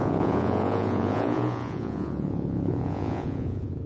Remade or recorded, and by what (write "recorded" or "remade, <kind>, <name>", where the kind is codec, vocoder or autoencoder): remade, vocoder, Vocos